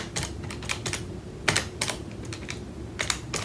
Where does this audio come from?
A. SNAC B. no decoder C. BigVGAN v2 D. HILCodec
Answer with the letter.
B